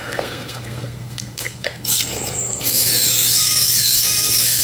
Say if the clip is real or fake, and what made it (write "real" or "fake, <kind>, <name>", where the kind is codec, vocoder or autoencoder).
fake, codec, SNAC